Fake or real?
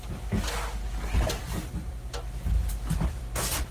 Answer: real